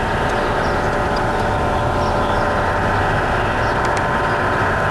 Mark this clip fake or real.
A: real